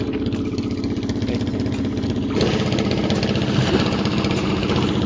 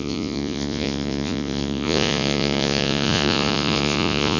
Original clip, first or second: first